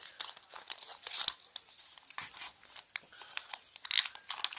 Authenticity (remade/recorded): recorded